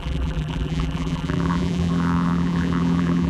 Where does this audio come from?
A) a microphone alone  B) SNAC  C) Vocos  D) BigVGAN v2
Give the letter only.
D